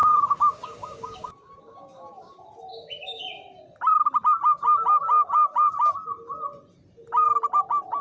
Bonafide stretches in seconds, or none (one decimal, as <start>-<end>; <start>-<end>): 2.3-2.7; 3.2-8.0